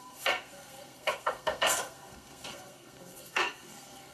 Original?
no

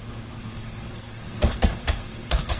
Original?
no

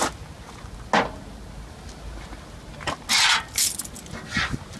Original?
yes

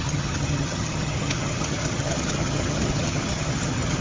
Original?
no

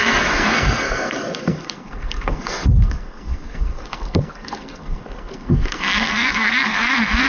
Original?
no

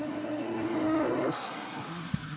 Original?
no